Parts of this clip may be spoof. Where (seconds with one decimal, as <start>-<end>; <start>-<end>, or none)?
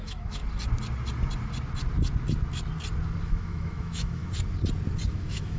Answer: 0.0-0.4; 3.2-4.2; 5.1-5.6